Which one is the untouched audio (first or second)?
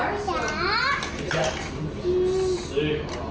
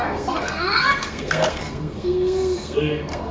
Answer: first